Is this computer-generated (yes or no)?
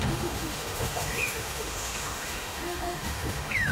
yes